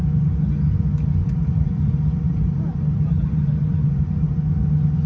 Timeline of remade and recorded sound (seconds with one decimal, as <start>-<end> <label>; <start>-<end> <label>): 0.0-1.2 recorded; 1.2-4.3 remade; 4.3-5.1 recorded